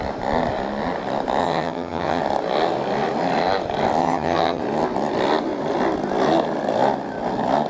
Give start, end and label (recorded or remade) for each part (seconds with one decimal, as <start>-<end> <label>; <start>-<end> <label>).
0.0-1.4 recorded; 1.4-2.2 remade; 2.2-4.0 recorded; 4.0-4.6 remade; 4.6-7.7 recorded